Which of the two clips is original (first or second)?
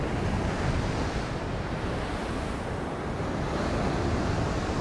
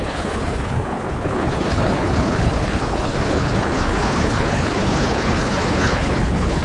first